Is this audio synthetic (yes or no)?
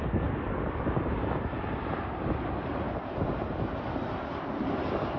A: no